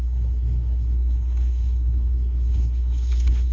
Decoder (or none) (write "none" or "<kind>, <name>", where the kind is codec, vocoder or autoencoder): codec, SNAC